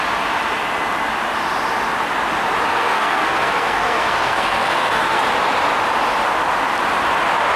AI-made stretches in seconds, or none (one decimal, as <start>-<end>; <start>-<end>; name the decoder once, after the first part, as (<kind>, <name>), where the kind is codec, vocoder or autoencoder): 2.7-5.2 (codec, SNAC)